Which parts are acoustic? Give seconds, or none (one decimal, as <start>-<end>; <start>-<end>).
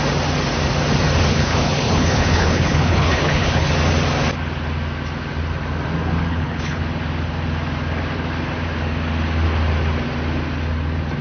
0.0-1.3; 3.7-6.3; 6.8-11.2